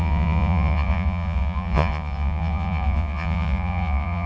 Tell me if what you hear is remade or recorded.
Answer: remade